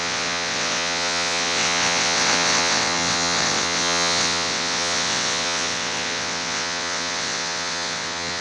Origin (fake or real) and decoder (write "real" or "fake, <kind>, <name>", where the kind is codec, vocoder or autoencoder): fake, vocoder, WaveNeXt